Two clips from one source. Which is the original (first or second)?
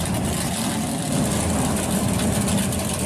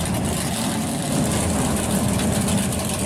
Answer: second